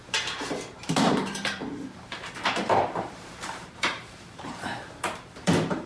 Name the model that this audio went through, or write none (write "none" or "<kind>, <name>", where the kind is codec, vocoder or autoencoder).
vocoder, BigVGAN v2